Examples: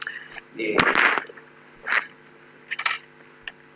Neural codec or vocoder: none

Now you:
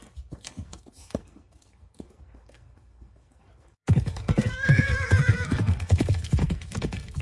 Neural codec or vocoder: codec, SNAC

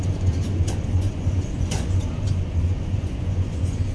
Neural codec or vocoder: vocoder, Vocos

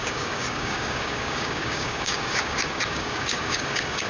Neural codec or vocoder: codec, DAC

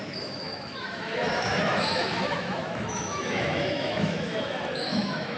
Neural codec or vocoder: autoencoder, DAC-VAE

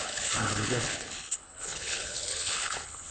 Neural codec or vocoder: codec, HILCodec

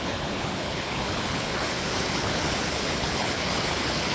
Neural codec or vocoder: codec, HILCodec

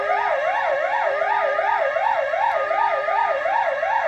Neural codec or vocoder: none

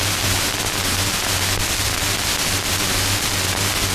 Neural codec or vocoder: none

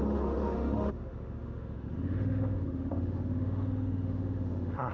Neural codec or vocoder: autoencoder, DAC-VAE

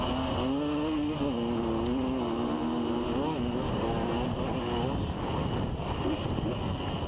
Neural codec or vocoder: none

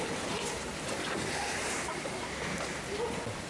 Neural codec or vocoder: none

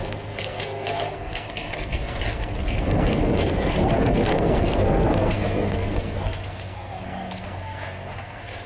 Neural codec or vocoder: codec, SNAC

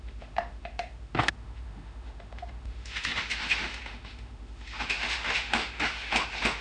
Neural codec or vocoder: autoencoder, DAC-VAE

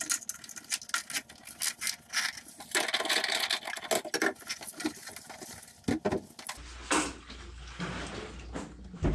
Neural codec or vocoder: none